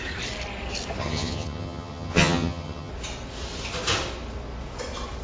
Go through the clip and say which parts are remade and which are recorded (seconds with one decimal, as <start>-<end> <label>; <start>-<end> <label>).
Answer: 0.0-1.0 recorded; 1.0-2.9 remade; 2.9-5.2 recorded

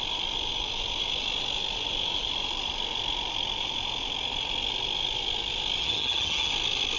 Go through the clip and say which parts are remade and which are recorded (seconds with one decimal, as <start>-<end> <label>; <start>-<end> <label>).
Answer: 0.0-5.8 recorded; 5.8-6.5 remade; 6.5-7.0 recorded

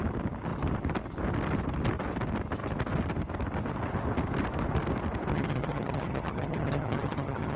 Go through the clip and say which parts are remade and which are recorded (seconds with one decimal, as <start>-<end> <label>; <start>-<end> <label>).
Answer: 0.0-5.3 recorded; 5.3-7.6 remade

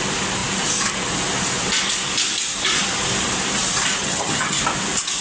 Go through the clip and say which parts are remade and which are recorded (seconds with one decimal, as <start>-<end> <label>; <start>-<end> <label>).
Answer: 0.0-4.0 recorded; 4.0-4.6 remade; 4.6-5.2 recorded